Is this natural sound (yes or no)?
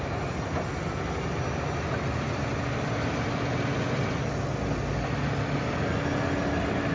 yes